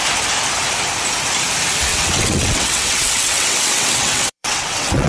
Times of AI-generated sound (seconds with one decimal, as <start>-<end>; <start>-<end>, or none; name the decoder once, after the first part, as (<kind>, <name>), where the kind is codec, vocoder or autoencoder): 1.9-5.1 (vocoder, WaveNeXt)